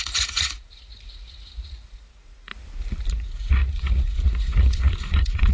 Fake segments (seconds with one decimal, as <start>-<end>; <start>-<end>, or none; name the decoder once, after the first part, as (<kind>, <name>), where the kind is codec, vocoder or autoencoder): 0.0-2.5 (vocoder, Vocos); 3.1-5.5